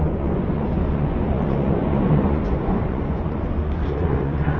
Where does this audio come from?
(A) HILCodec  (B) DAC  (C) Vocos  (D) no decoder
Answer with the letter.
C